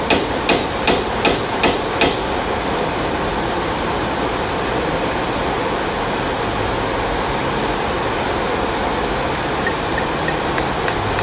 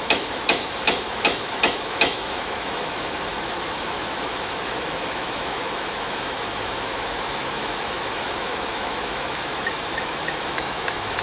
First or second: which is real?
first